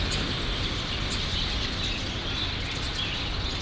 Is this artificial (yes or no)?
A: no